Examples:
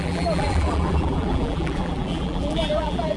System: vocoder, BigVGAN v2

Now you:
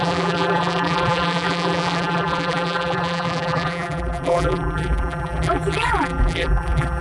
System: vocoder, BigVGAN v2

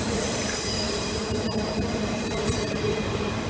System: vocoder, BigVGAN v2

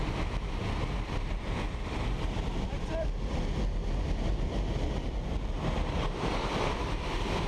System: vocoder, BigVGAN v2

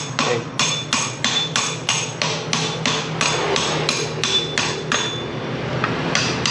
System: none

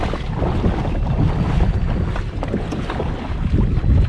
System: none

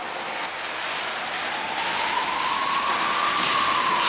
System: none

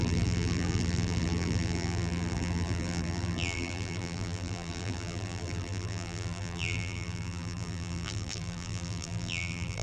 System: vocoder, BigVGAN v2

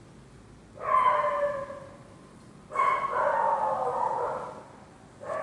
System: none